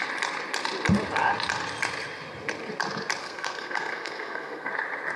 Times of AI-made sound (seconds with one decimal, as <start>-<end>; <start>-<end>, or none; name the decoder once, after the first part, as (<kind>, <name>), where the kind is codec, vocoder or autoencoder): 3.2-4.7 (codec, SNAC)